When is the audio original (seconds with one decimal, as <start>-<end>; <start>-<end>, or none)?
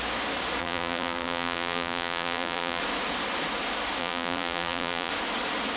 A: 0.0-0.6; 2.8-4.0; 5.1-5.8